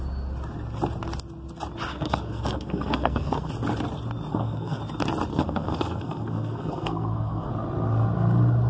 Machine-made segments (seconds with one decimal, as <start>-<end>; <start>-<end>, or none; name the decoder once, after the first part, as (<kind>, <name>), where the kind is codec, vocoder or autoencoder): 1.9-3.5 (codec, SNAC); 4.3-4.8; 5.3-7.5